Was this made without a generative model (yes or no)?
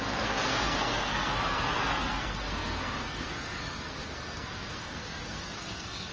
no